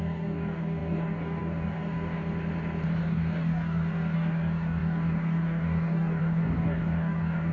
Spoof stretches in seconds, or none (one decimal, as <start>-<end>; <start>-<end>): 0.0-2.2; 3.0-7.5